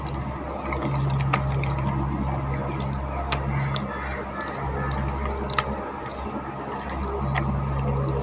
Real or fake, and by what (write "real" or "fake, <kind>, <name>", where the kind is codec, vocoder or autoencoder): real